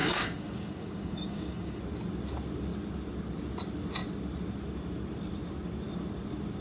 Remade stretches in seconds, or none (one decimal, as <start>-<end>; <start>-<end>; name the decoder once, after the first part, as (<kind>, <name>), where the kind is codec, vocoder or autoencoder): 0.0-1.8 (codec, DAC)